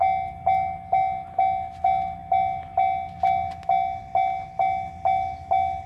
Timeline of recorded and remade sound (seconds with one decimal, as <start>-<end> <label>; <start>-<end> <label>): 0.0-5.9 recorded